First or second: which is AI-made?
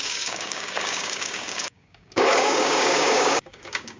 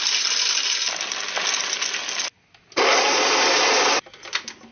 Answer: first